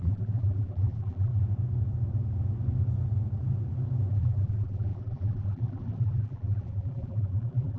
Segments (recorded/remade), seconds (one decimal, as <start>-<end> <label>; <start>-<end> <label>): 0.0-1.3 remade; 1.3-4.1 recorded; 4.1-7.8 remade